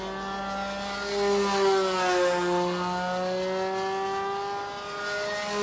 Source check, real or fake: real